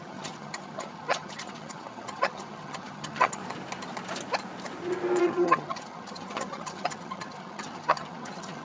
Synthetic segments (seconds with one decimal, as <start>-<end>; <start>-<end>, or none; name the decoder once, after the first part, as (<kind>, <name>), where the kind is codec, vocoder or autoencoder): 0.0-3.4 (vocoder, HiFi-GAN); 5.2-8.6